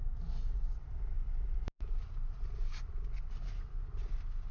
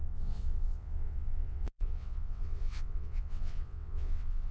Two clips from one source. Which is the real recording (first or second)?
first